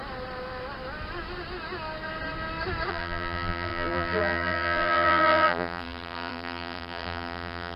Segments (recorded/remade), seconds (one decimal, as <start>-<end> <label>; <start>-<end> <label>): 0.0-2.9 recorded; 2.9-7.8 remade